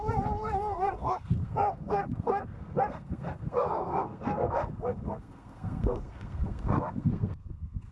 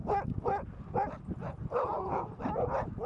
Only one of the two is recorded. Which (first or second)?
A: second